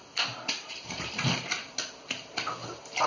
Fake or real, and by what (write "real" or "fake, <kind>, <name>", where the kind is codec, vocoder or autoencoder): real